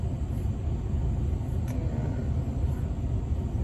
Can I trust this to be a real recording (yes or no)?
yes